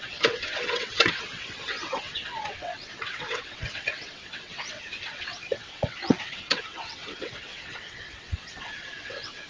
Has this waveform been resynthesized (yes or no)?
yes